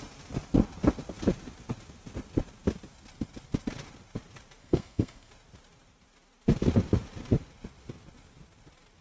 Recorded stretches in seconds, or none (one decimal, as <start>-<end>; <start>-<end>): 0.0-4.6; 5.3-9.0